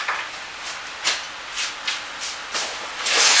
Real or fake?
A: real